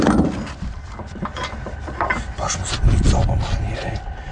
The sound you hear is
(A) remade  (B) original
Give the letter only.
B